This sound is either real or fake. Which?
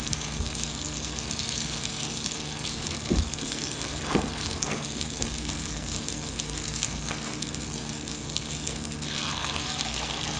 fake